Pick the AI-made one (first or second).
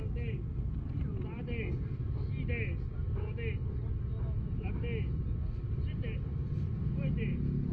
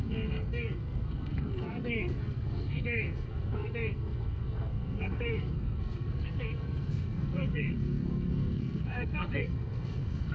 second